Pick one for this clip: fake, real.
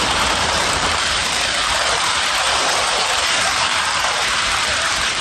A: fake